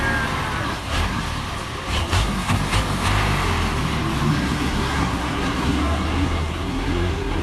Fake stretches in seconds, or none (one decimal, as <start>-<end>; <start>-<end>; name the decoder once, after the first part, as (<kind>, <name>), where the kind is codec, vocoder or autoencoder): 0.6-1.2 (codec, SNAC); 2.0-2.6; 4.3-7.4